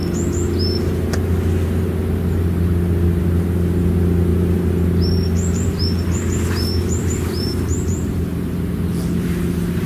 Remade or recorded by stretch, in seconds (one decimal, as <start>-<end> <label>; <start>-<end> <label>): 0.0-4.3 recorded; 4.3-9.5 remade; 9.5-9.9 recorded